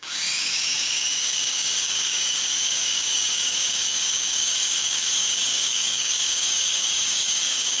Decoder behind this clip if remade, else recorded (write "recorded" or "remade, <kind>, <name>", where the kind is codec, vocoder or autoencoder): remade, codec, DAC